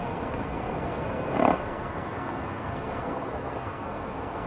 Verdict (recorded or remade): remade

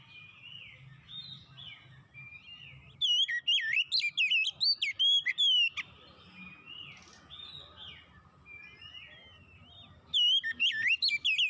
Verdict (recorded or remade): recorded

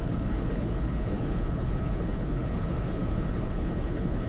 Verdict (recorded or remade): remade